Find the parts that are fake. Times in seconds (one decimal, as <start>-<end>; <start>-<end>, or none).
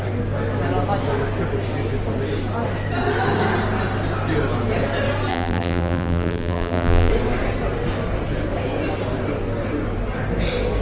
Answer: 5.3-7.1